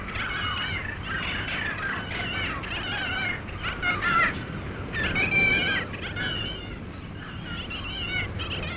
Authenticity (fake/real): real